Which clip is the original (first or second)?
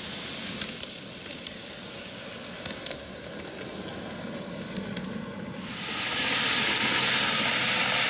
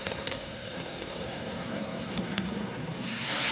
first